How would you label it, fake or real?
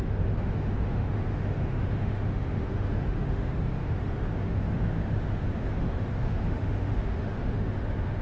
fake